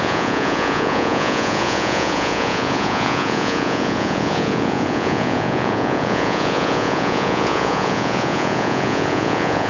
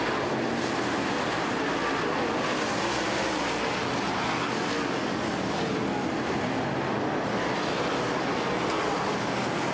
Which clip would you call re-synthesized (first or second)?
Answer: first